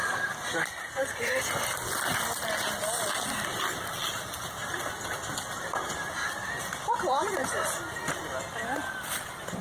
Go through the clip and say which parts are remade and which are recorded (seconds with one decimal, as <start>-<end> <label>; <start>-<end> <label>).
0.0-9.6 recorded